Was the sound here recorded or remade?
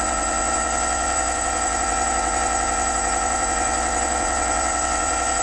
remade